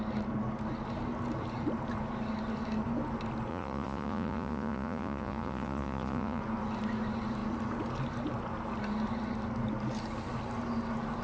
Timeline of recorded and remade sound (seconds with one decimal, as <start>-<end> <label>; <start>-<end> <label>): 0.0-3.5 recorded; 3.5-6.4 remade; 6.4-11.2 recorded